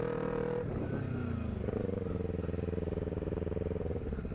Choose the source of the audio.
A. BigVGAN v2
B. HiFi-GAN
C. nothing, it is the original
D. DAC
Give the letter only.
C